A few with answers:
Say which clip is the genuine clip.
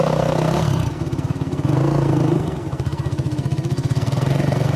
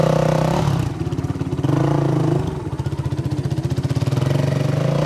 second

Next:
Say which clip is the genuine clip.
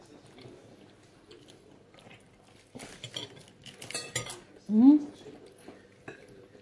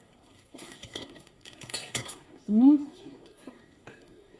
first